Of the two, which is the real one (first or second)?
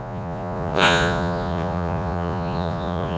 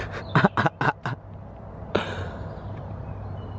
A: second